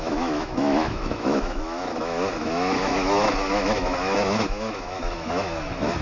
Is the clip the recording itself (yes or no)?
no